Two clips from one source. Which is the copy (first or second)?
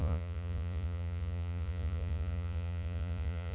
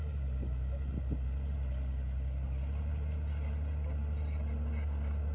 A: first